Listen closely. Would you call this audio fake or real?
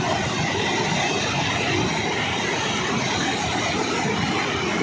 real